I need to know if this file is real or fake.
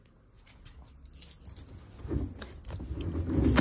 real